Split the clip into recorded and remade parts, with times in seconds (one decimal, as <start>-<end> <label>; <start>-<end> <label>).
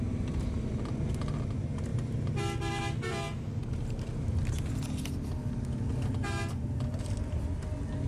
0.0-8.1 recorded